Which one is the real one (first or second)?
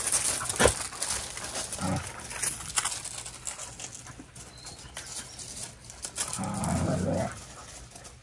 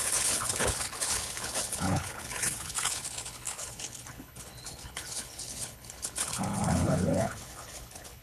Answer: first